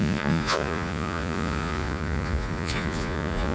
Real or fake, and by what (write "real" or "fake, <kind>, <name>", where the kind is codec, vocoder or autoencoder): fake, vocoder, Vocos